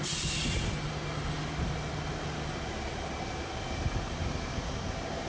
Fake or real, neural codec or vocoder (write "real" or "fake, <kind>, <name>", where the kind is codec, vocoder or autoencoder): real